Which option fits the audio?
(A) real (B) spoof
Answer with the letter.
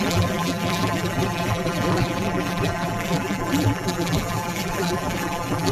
B